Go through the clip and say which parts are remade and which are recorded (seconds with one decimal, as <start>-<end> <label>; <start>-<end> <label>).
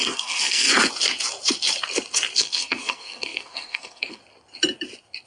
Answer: 0.0-0.7 remade; 0.7-2.4 recorded; 2.4-4.2 remade; 4.2-5.3 recorded